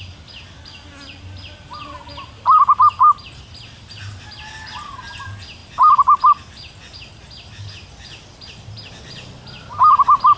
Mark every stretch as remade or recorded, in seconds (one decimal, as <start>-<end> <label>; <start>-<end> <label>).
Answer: 0.0-10.4 recorded